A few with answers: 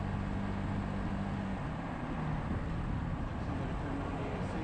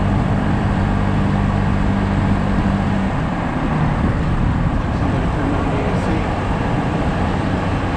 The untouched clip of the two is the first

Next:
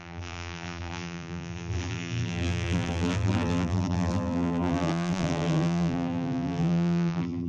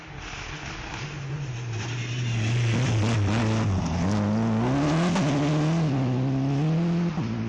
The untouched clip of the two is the second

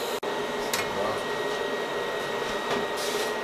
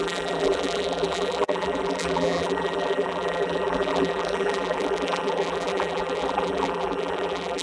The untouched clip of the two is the first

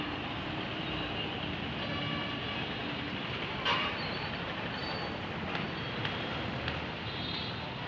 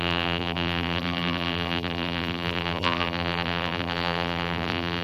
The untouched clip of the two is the first